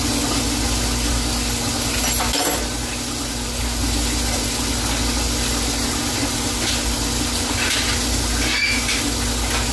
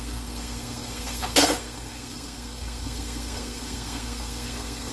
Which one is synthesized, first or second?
second